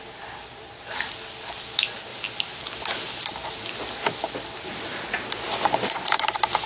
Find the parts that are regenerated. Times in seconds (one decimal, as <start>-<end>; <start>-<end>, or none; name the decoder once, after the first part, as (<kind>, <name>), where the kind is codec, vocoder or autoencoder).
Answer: none